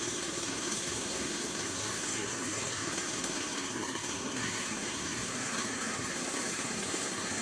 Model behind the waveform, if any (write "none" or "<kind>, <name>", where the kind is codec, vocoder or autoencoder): codec, SNAC